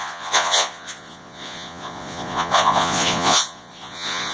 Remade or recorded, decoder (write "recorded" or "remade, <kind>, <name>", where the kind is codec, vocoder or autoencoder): remade, vocoder, Vocos